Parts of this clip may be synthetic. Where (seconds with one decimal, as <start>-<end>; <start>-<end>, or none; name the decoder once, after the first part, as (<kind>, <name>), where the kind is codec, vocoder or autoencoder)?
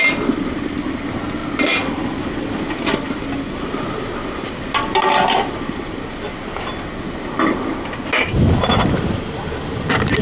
none